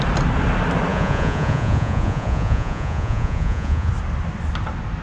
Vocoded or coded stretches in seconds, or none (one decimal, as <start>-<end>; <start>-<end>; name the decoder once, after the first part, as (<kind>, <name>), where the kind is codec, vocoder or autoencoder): 0.9-3.9 (vocoder, Vocos)

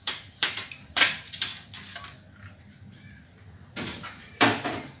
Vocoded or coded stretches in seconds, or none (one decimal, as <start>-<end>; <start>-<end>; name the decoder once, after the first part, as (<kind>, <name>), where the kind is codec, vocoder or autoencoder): 0.0-1.5 (vocoder, BigVGAN v2); 3.7-5.0

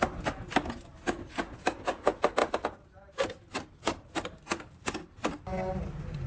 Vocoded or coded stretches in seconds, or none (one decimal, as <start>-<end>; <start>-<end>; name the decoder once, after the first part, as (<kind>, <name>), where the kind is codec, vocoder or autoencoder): none

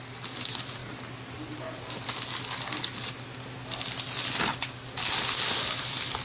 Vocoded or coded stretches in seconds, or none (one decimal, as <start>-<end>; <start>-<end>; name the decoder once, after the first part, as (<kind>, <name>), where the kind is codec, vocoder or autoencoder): none

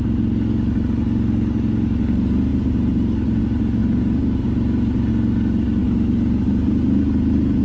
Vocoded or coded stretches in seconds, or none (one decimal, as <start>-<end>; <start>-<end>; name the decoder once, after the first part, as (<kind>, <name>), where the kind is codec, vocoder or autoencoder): 2.5-3.4 (vocoder, BigVGAN v2); 3.8-5.1; 5.8-7.6

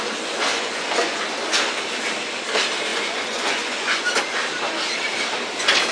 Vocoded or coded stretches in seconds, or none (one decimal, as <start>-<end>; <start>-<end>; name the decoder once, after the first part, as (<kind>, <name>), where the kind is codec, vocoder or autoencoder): 0.5-1.2 (vocoder, Vocos); 2.9-4.1